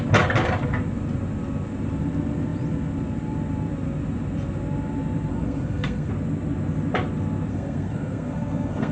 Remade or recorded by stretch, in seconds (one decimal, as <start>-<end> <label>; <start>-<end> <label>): 0.0-5.3 recorded; 5.3-6.1 remade; 6.1-7.5 recorded; 7.5-8.9 remade